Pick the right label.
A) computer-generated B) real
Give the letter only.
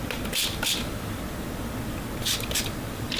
A